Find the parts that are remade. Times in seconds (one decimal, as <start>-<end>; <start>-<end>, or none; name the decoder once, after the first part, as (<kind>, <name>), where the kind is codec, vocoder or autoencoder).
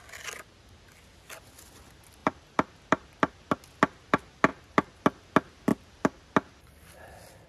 2.2-3.3 (vocoder, BigVGAN v2); 4.5-5.0